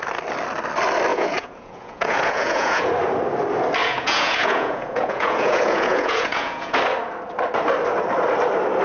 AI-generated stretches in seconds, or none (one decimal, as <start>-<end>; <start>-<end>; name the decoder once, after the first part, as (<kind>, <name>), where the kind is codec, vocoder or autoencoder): 1.1-2.9 (vocoder, Vocos); 3.8-6.8